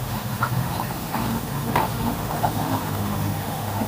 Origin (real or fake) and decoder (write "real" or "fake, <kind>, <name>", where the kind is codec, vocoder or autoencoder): fake, autoencoder, DAC-VAE